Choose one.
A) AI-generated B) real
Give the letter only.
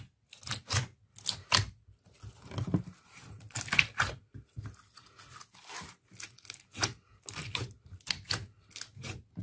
B